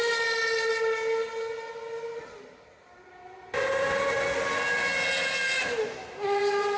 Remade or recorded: recorded